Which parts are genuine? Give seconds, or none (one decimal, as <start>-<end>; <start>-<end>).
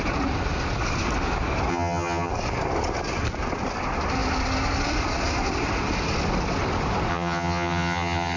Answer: 0.0-1.7; 2.3-7.1